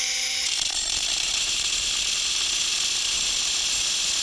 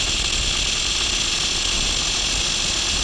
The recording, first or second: second